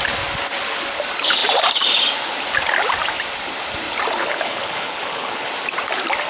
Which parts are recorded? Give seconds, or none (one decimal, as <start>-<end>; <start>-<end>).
0.0-4.2; 5.5-6.3